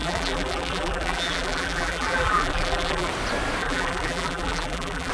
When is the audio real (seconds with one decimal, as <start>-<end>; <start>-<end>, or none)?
3.1-3.6